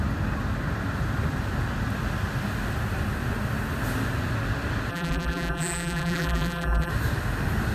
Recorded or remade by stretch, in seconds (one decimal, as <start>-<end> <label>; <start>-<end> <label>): 0.0-4.9 recorded; 4.9-6.9 remade; 6.9-7.7 recorded